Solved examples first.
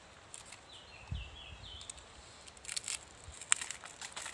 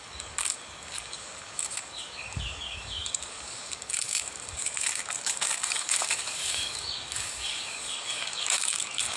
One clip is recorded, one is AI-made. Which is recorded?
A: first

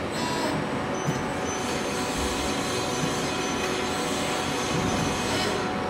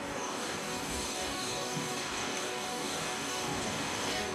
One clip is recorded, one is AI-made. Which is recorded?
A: first